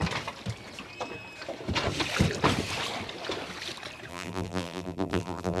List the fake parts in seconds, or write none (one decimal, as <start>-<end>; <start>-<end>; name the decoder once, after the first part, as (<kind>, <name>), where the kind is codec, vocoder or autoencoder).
4.1-5.6 (vocoder, BigVGAN v2)